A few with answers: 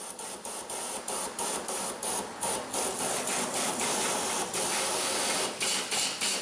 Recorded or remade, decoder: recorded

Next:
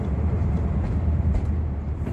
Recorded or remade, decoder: remade, vocoder, BigVGAN v2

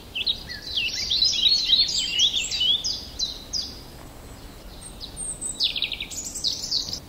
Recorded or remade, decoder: recorded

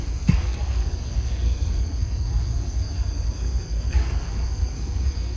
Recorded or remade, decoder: remade, codec, SNAC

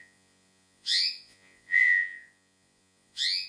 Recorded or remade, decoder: remade, vocoder, Vocos